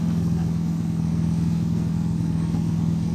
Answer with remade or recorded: remade